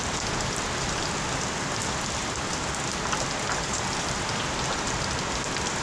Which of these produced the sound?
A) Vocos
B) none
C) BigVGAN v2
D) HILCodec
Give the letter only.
B